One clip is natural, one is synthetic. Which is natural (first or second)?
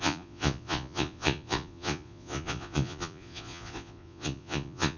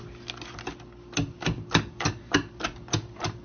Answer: second